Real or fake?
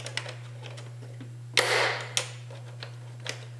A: real